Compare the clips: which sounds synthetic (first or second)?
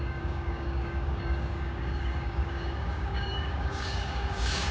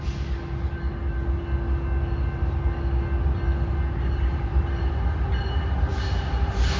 first